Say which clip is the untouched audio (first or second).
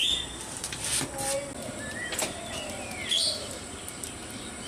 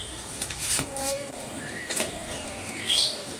first